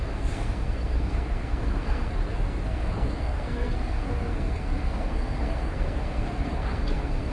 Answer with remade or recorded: remade